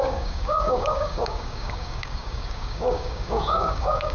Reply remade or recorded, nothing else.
remade